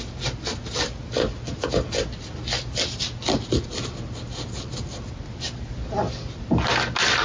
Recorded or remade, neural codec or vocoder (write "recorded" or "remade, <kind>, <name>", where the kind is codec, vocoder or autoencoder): recorded